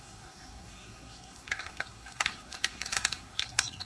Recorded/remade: remade